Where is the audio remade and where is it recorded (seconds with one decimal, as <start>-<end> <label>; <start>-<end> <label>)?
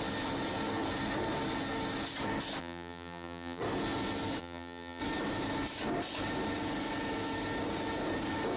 0.0-2.6 recorded; 2.6-3.6 remade; 3.6-4.4 recorded; 4.4-5.0 remade; 5.0-8.6 recorded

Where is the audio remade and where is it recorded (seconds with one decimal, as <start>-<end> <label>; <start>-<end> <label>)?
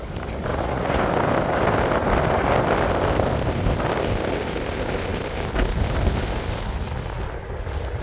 0.0-0.5 recorded; 0.5-1.0 remade; 1.0-8.0 recorded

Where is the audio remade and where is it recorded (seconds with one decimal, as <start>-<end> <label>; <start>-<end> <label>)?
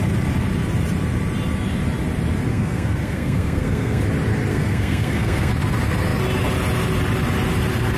0.0-2.5 recorded; 2.5-4.0 remade; 4.0-4.5 recorded; 4.5-5.5 remade; 5.5-8.0 recorded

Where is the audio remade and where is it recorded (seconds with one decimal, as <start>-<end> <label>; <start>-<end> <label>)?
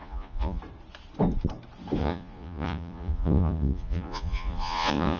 0.0-0.6 remade; 0.6-2.0 recorded; 2.0-5.2 remade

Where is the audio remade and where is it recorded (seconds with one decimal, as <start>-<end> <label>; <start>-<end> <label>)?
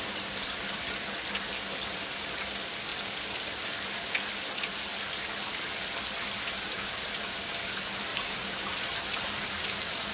0.0-8.1 recorded; 8.1-10.1 remade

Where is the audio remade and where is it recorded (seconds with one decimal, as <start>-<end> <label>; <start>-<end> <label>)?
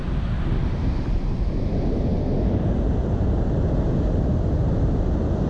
0.0-5.5 recorded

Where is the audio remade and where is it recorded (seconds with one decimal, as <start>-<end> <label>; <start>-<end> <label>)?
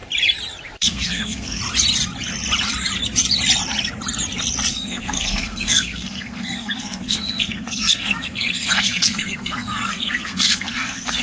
0.0-0.8 recorded; 0.8-1.6 remade; 1.6-4.7 recorded; 4.7-11.2 remade